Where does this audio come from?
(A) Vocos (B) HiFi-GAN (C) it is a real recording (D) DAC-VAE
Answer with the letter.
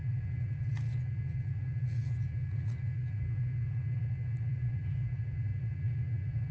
A